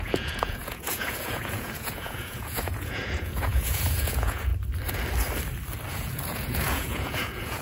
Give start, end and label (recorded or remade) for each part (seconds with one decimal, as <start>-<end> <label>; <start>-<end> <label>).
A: 0.0-4.5 remade; 4.5-5.9 recorded; 5.9-7.6 remade